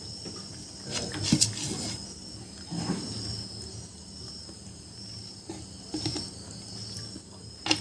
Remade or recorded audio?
recorded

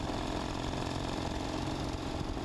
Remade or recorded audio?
recorded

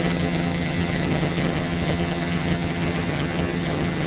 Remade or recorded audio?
remade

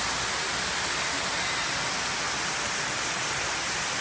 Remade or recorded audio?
recorded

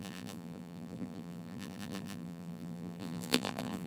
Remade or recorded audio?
remade